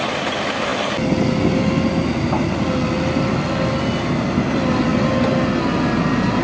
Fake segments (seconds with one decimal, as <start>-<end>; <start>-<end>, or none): none